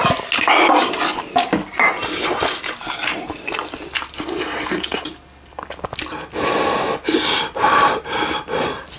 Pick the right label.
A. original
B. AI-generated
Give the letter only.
A